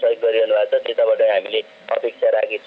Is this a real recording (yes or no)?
yes